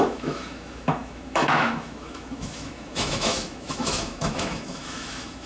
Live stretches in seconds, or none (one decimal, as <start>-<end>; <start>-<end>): none